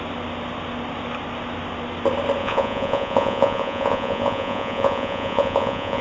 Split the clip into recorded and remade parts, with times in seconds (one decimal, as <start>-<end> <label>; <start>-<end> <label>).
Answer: 0.0-2.4 recorded; 2.4-6.0 remade